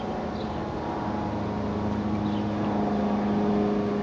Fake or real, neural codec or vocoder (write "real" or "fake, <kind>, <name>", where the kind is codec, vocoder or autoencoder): real